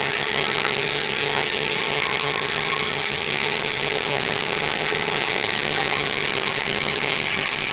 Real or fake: fake